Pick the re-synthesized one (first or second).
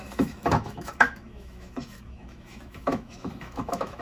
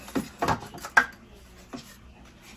first